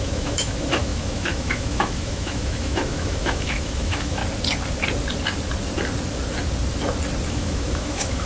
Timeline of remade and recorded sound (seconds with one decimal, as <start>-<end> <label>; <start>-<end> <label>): 0.0-4.2 remade; 4.2-7.3 recorded; 7.3-8.3 remade